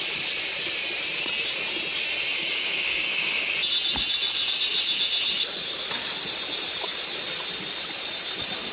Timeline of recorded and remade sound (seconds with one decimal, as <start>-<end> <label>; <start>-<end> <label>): 0.0-2.3 recorded; 2.3-3.5 remade; 3.5-8.7 recorded